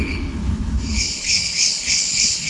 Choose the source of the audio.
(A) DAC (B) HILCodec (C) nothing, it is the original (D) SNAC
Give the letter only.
B